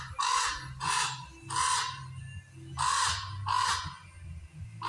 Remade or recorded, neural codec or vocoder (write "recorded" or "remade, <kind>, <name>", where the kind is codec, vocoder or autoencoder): recorded